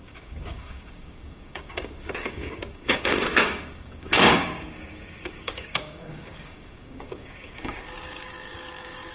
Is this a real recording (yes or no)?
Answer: no